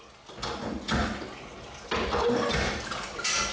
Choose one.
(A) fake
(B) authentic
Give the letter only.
B